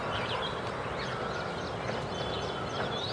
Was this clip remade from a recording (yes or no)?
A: no